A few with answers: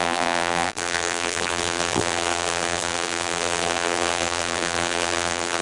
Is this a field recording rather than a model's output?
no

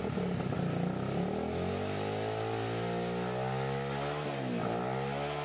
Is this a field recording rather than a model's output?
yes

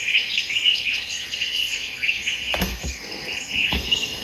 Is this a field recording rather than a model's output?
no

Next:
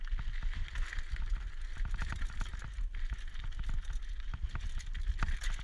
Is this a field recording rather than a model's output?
yes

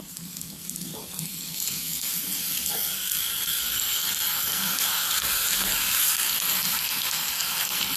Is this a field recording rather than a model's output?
no